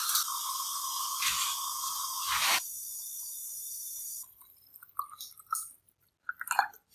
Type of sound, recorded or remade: recorded